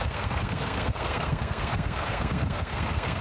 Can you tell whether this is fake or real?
fake